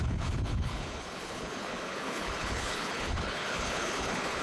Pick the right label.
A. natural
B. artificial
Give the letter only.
B